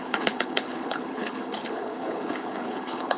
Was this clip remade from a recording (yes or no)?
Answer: yes